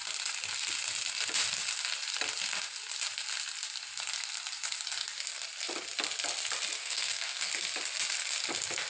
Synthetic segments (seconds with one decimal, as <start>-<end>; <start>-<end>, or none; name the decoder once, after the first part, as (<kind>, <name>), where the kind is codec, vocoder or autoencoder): 6.8-7.5 (codec, SNAC)